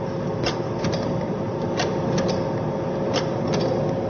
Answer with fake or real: real